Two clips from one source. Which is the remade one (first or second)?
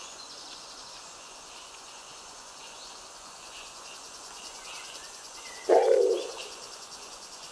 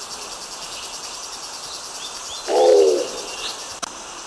first